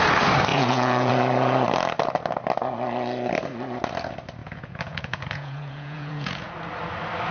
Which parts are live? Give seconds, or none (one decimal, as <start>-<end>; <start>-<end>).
0.0-0.5; 1.1-4.4; 6.5-7.3

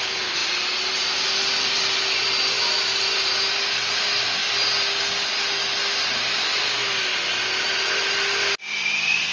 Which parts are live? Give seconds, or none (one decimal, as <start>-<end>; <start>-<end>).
0.0-9.3

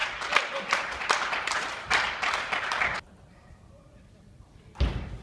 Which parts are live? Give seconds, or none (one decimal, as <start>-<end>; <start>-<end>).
0.0-1.0